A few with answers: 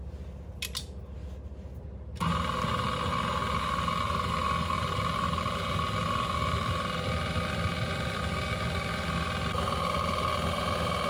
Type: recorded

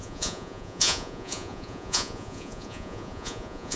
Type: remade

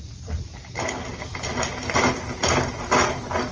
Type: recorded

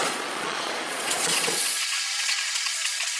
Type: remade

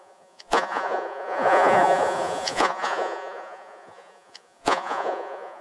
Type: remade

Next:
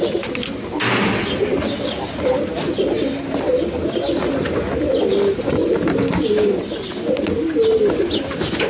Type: recorded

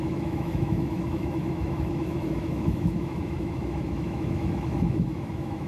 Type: remade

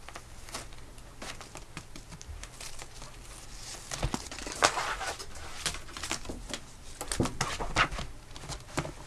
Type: recorded